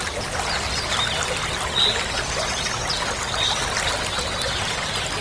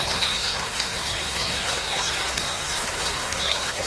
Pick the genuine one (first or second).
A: first